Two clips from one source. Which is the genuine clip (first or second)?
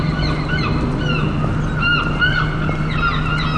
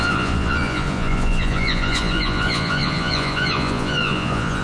first